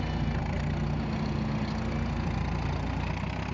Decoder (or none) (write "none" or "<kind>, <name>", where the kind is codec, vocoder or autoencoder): none